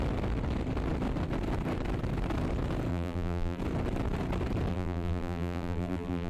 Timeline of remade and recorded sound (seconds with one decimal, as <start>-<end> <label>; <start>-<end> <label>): 0.0-2.9 recorded; 2.9-3.6 remade; 3.6-4.7 recorded; 4.7-6.3 remade